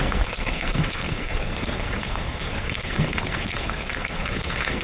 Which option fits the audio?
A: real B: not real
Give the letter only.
B